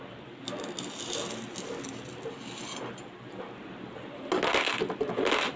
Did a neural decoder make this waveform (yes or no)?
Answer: no